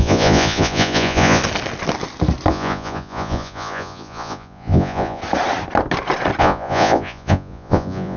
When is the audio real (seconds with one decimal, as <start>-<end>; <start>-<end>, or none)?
1.4-2.5; 5.2-6.4